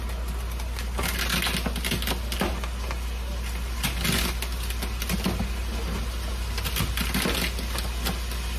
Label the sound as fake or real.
real